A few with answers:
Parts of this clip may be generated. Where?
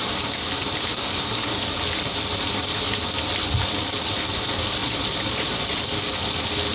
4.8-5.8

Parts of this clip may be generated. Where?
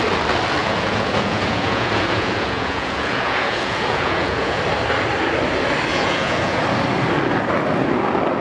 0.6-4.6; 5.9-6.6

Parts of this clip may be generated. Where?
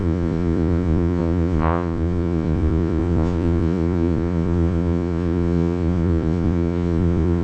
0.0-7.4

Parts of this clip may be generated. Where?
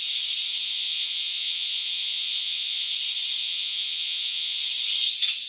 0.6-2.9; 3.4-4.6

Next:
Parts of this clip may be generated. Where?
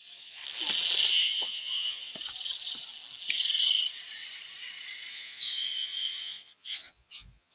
0.0-0.4; 1.1-2.1; 5.1-7.5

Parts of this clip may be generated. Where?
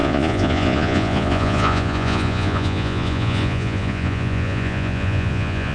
0.0-5.7